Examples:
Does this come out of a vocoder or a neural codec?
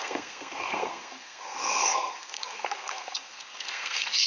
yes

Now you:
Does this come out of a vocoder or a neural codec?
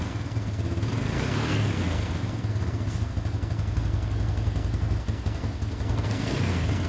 yes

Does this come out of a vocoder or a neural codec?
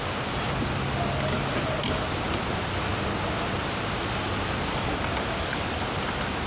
no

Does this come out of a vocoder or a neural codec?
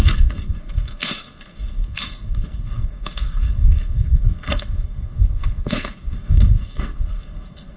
yes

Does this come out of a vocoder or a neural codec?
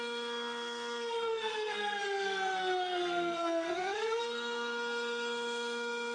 yes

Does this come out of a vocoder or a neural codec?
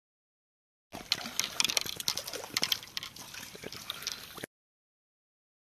no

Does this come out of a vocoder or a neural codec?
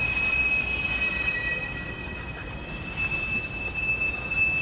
no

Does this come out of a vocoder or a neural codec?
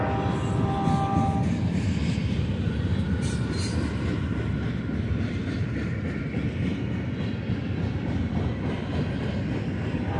no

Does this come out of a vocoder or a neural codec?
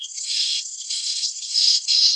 yes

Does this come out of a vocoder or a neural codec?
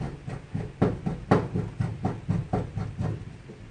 no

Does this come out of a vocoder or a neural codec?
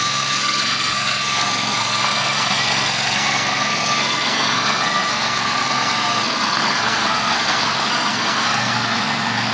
yes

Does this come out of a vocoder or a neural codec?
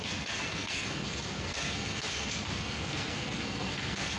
yes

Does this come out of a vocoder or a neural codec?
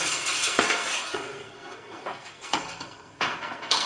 yes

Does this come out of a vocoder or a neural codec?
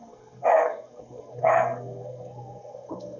yes